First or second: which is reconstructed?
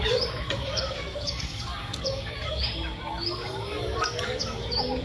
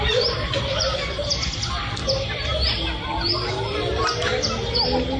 first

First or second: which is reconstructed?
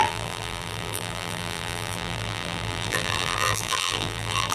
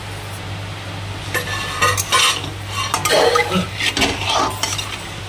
first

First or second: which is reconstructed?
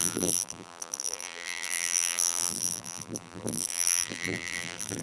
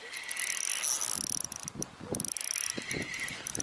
first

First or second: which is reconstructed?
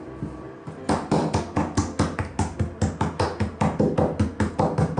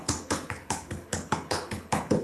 second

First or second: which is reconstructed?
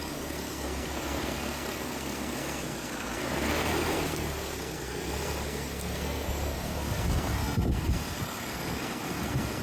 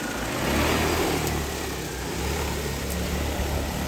first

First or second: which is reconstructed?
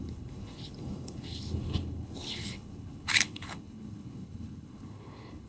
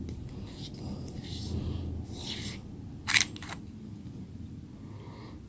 first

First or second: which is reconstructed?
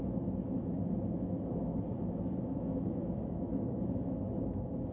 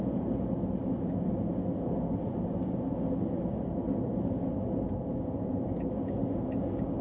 first